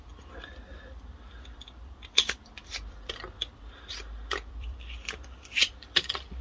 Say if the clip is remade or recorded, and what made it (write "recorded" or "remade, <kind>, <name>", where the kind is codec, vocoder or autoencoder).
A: remade, vocoder, BigVGAN v2